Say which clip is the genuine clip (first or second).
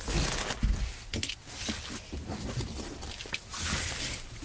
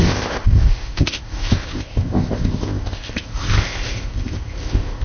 first